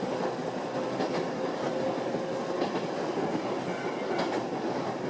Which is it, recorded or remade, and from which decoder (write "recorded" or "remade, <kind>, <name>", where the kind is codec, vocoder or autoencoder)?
recorded